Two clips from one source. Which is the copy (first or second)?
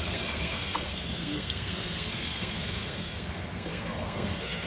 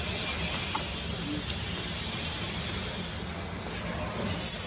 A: first